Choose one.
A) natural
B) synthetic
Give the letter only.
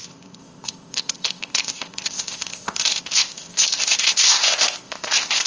B